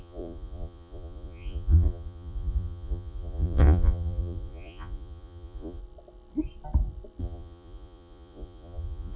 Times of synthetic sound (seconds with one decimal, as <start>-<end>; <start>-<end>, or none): 0.0-5.8; 7.2-9.2